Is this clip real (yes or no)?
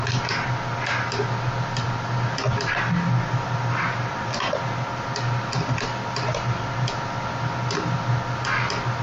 yes